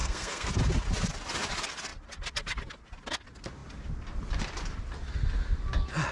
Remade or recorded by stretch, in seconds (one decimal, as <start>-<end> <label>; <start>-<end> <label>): 0.0-0.5 remade; 0.5-6.1 recorded